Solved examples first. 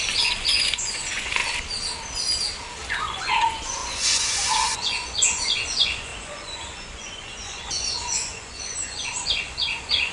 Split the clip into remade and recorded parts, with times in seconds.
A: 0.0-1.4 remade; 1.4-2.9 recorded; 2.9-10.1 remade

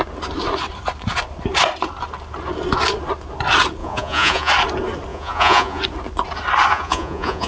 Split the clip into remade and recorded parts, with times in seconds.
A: 0.0-3.8 recorded; 3.8-4.5 remade; 4.5-5.1 recorded; 5.1-5.8 remade; 5.8-6.7 recorded; 6.7-7.5 remade

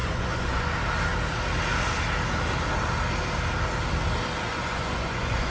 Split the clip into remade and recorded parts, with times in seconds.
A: 0.0-0.7 remade; 0.7-4.5 recorded; 4.5-5.5 remade

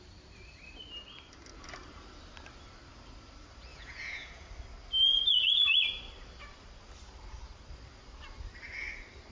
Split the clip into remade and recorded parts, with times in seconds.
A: 0.0-3.7 recorded; 3.7-4.5 remade; 4.5-5.1 recorded; 5.1-5.7 remade; 5.7-9.3 recorded

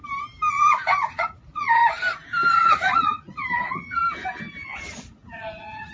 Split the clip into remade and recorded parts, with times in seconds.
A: 0.0-0.5 recorded; 0.5-1.8 remade; 1.8-2.5 recorded; 2.5-4.0 remade; 4.0-4.6 recorded; 4.6-5.9 remade